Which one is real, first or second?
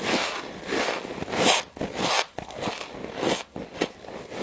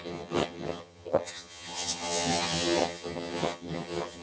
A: first